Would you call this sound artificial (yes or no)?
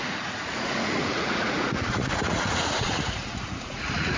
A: yes